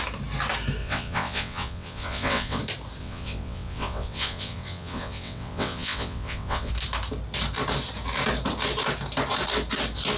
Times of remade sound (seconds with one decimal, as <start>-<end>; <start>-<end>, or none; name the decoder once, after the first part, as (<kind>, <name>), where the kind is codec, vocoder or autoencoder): 0.8-2.6 (vocoder, WaveNeXt); 3.0-6.7